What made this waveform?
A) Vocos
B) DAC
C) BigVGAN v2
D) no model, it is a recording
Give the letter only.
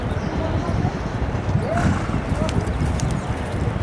D